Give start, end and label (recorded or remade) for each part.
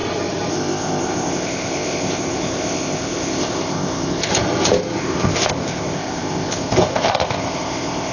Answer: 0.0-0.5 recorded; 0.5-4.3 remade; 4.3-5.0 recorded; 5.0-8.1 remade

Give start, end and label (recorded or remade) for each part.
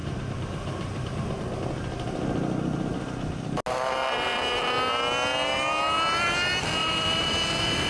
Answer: 0.0-1.4 remade; 1.4-6.8 recorded; 6.8-7.3 remade; 7.3-7.9 recorded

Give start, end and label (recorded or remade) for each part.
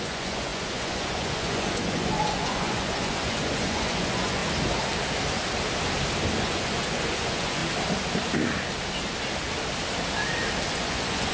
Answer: 0.0-4.4 remade; 4.4-6.4 recorded; 6.4-7.6 remade; 7.6-10.7 recorded; 10.7-11.3 remade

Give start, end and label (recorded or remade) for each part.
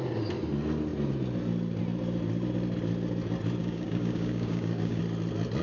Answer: 0.0-3.6 recorded; 3.6-5.0 remade; 5.0-5.6 recorded